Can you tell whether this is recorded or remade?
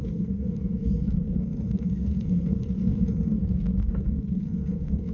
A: remade